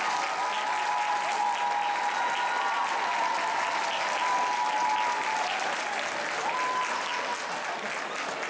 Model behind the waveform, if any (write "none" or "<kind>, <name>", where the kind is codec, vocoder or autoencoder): none